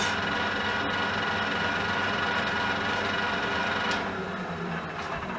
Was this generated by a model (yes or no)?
no